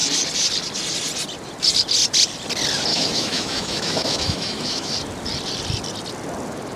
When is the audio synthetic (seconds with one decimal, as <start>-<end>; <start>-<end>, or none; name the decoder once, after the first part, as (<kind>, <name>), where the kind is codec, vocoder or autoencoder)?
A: 2.9-4.9 (autoencoder, DAC-VAE)